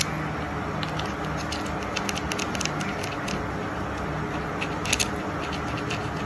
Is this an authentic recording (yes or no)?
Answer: yes